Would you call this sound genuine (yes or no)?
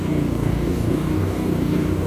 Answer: no